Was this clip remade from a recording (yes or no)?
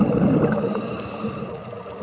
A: no